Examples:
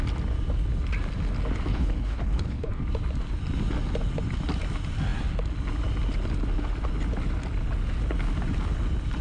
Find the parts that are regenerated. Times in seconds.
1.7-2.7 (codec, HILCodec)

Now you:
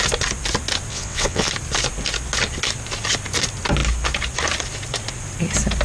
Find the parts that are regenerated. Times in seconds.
0.9-1.5 (vocoder, WaveNeXt)

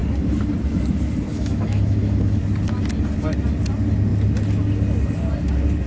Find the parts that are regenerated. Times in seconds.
1.3-2.4 (autoencoder, DAC-VAE)

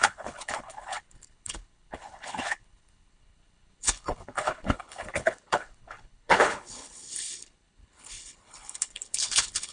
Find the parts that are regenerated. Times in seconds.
0.0-9.7 (codec, HILCodec)

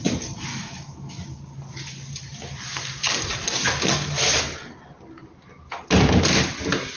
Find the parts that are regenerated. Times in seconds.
0.5-1.4 (autoencoder, DAC-VAE)

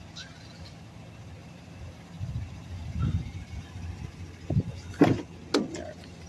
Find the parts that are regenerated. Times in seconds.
1.4-3.0 (vocoder, BigVGAN v2)